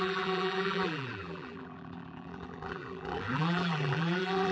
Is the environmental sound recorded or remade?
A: remade